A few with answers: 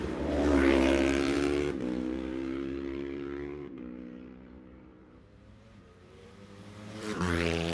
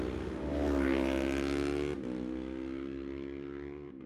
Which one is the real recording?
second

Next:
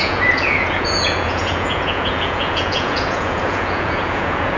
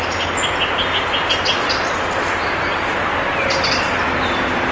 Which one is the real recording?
second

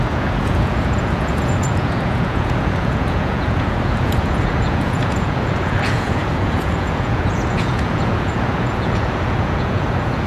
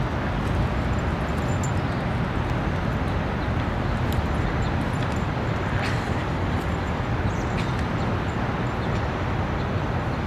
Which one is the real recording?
second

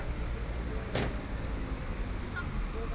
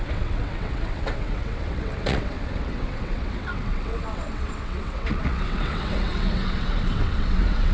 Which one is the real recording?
first